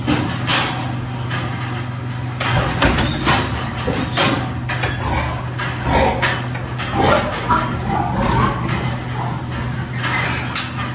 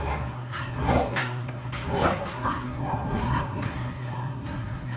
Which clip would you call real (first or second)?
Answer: first